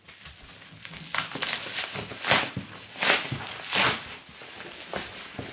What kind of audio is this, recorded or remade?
recorded